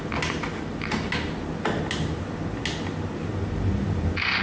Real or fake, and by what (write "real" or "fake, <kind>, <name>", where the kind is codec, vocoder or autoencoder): real